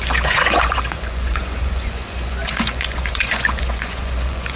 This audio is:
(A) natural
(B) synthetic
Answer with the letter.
B